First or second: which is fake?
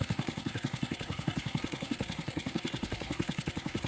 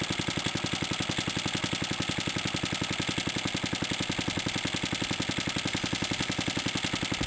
first